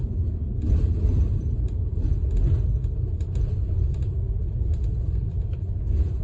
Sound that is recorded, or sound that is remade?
recorded